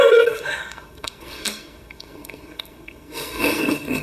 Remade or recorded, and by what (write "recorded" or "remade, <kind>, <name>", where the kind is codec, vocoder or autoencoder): remade, codec, SNAC